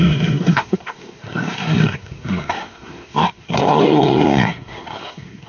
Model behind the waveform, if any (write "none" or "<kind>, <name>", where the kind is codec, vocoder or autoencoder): codec, SNAC